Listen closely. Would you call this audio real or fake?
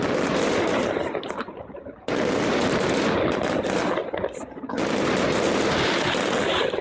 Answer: real